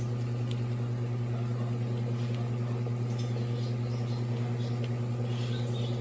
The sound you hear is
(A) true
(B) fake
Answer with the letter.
A